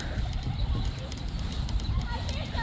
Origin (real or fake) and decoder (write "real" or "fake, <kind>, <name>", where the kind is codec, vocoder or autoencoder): fake, vocoder, BigVGAN v2